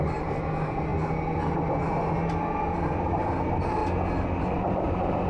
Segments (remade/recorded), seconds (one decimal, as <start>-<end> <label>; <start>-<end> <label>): 0.0-0.9 remade; 0.9-3.0 recorded; 3.0-3.8 remade; 3.8-4.4 recorded; 4.4-5.3 remade